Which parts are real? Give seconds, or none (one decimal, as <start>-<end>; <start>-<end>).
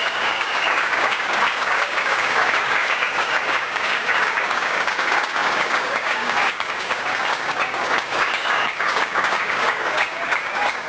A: none